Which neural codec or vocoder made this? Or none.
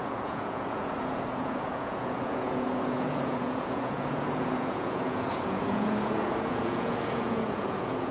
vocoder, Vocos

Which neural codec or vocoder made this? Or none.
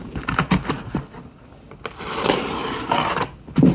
none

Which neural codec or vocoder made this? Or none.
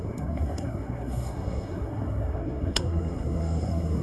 codec, SNAC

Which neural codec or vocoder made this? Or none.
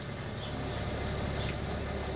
none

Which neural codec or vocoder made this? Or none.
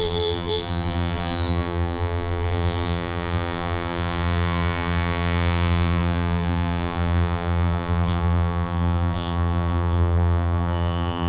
vocoder, BigVGAN v2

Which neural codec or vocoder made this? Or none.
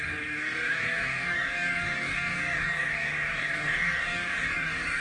codec, DAC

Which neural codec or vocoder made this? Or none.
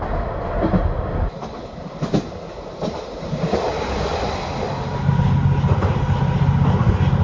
none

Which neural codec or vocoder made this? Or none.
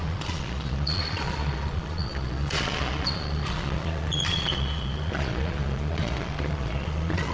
vocoder, Vocos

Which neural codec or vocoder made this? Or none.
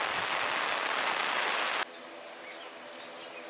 none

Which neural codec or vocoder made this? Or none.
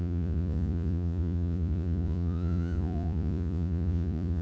vocoder, Vocos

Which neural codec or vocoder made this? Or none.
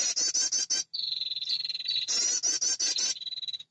none